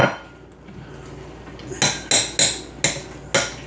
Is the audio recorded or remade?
recorded